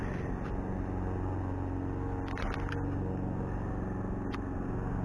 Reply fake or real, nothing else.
real